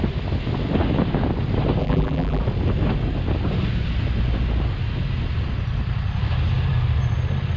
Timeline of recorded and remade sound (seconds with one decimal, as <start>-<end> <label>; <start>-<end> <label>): 0.0-1.8 recorded; 1.8-2.4 remade; 2.4-7.6 recorded